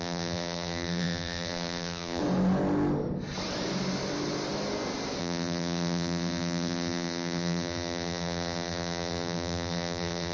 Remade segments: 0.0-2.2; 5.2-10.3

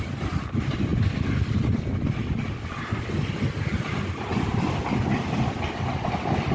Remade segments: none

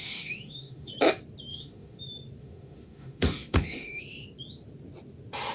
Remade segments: 0.0-0.9; 1.5-2.0; 2.4-4.0